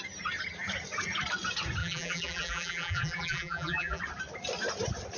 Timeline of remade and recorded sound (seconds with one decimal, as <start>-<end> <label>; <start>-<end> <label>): 0.0-1.8 recorded; 1.8-4.0 remade; 4.0-5.2 recorded